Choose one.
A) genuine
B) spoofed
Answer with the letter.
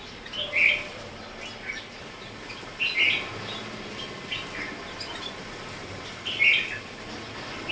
A